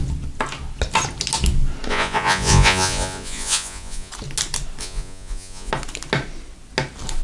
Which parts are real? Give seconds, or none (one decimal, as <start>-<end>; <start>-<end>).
0.0-1.9; 4.1-4.8; 5.7-7.2